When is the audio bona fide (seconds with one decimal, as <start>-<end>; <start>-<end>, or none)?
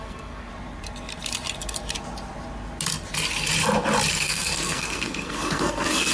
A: 0.5-4.1